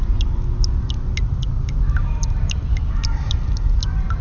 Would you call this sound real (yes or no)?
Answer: yes